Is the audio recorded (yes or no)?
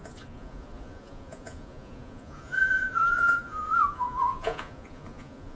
no